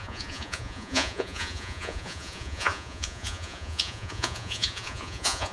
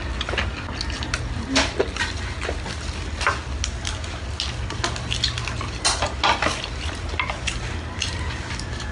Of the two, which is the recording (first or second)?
second